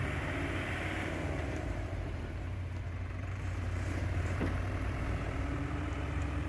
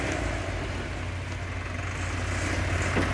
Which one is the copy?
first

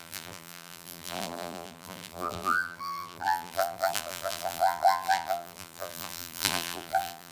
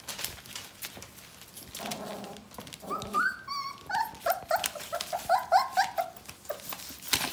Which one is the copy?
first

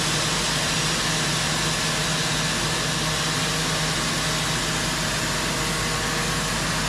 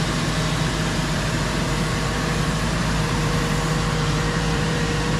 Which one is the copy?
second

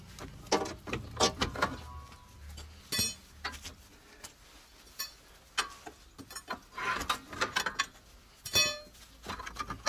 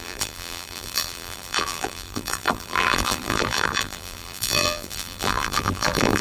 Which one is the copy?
second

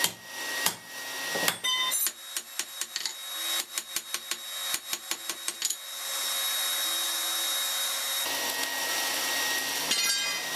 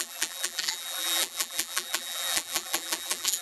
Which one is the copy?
second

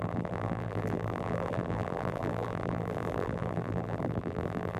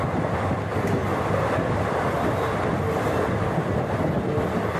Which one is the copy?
first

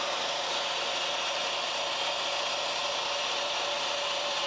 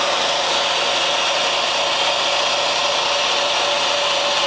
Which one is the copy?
first